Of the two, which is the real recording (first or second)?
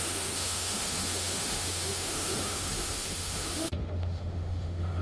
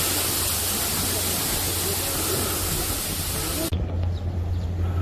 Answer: second